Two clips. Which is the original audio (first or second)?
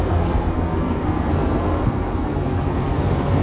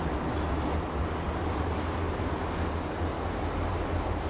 second